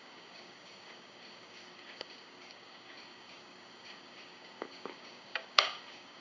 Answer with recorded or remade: remade